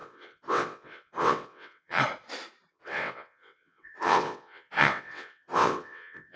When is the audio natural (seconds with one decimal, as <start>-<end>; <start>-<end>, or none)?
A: 2.0-2.7

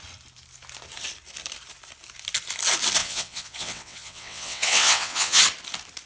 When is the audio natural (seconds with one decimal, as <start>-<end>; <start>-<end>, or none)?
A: 0.0-3.0; 5.4-6.1

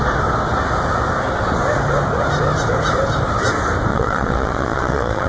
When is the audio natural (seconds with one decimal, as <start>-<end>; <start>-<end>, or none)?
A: 0.0-3.9

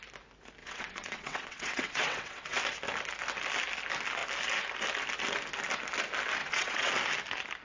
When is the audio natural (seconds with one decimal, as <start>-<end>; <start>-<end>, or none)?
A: 0.0-0.6; 2.6-6.4; 6.9-7.6